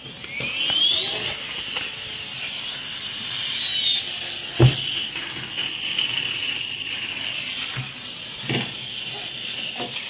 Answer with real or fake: real